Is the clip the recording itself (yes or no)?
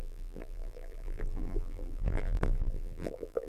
no